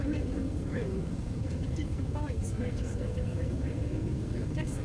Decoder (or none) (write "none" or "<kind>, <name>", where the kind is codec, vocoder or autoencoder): codec, SNAC